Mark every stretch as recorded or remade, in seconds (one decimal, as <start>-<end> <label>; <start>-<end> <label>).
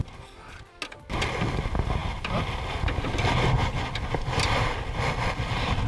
0.0-5.9 recorded